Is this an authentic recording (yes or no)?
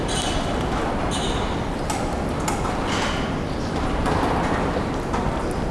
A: yes